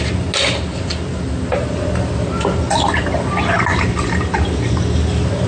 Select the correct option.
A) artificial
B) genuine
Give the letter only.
B